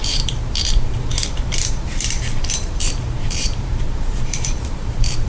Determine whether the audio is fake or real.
fake